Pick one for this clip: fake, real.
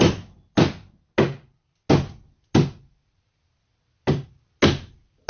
real